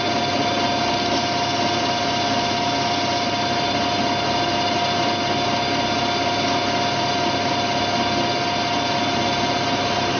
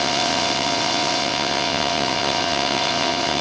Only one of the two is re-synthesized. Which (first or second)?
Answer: second